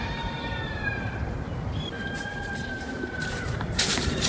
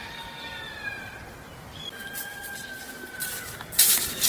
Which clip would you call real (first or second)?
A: second